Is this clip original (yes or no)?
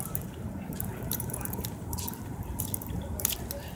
no